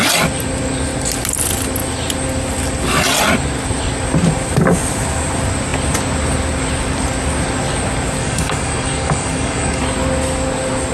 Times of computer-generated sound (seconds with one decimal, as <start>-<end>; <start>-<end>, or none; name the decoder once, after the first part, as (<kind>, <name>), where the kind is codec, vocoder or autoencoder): 8.2-9.8 (codec, DAC)